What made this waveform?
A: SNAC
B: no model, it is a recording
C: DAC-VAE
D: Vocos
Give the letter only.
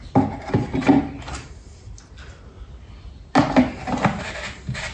B